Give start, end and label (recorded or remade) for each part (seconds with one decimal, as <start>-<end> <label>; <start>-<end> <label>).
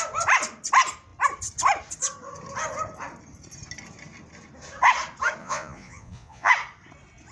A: 0.0-5.4 recorded; 5.4-6.5 remade; 6.5-7.3 recorded